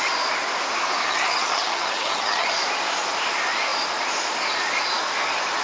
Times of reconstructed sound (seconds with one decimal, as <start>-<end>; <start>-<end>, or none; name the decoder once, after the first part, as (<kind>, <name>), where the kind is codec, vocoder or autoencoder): 1.0-2.5 (vocoder, HiFi-GAN)